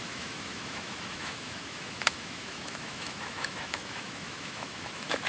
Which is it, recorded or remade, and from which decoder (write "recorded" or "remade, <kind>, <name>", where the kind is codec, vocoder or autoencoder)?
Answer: remade, autoencoder, DAC-VAE